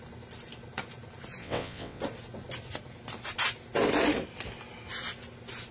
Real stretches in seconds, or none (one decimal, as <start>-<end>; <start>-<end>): 0.0-1.4; 2.0-5.7